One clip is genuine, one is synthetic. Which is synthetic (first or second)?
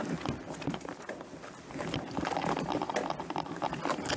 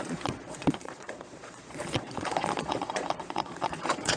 second